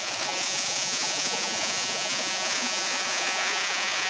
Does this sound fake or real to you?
fake